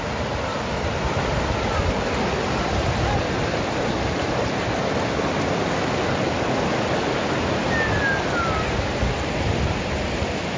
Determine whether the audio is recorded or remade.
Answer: recorded